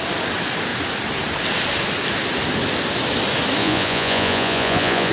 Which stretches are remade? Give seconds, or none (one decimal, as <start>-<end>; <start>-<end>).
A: 3.6-5.1